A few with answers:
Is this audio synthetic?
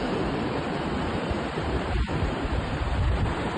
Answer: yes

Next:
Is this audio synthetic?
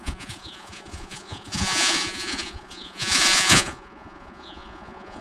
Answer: yes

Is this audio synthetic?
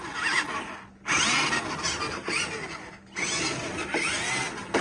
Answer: no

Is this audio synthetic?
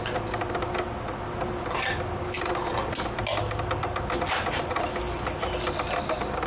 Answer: no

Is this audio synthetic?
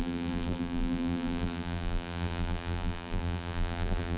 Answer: yes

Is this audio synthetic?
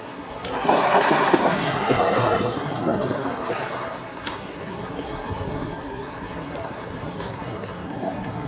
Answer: yes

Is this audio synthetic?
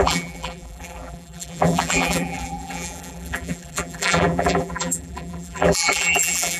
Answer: yes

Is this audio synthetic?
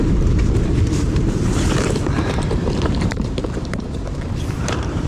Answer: yes